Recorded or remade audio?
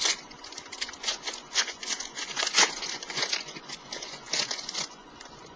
remade